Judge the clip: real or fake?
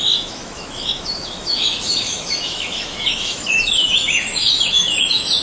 fake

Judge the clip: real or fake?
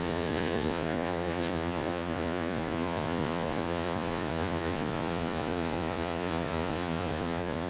fake